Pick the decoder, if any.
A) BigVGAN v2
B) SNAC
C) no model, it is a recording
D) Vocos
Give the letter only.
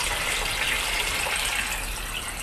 C